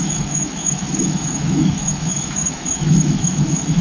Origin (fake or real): fake